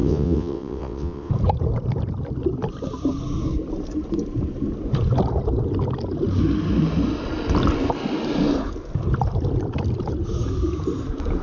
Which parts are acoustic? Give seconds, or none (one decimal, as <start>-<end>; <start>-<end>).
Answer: 1.3-11.4